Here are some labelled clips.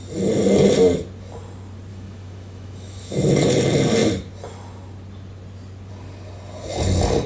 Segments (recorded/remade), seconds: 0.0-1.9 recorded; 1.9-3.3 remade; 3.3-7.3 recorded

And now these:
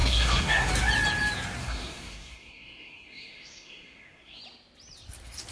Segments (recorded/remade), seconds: 0.0-0.7 remade; 0.7-1.6 recorded; 1.6-4.4 remade; 4.4-5.5 recorded